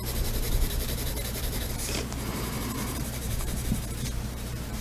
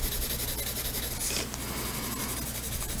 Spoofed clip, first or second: first